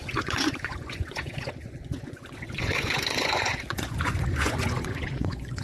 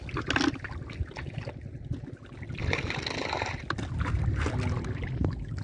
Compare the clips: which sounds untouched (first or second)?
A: second